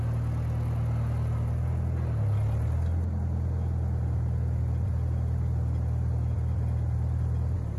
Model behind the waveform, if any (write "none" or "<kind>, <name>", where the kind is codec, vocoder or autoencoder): none